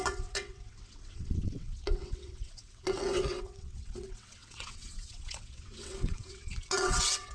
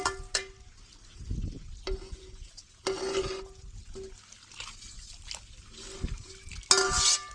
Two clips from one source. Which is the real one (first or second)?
second